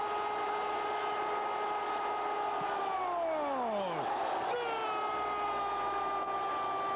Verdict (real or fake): real